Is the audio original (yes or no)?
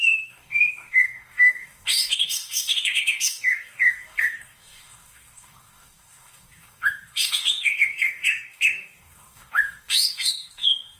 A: no